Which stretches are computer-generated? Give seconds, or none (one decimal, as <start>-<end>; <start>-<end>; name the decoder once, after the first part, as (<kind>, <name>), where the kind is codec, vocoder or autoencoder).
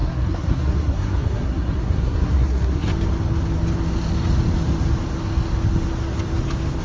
0.0-2.9 (codec, SNAC)